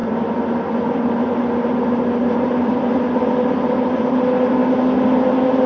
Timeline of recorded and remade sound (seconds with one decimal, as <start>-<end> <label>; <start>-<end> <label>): 0.0-5.7 recorded